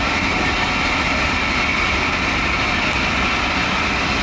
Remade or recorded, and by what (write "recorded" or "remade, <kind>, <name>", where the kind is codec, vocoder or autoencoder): recorded